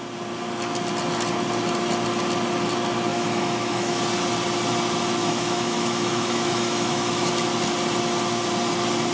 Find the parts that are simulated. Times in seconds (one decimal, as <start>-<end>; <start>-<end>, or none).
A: 3.1-4.0; 5.2-7.3